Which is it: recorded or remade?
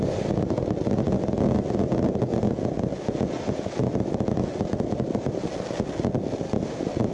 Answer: recorded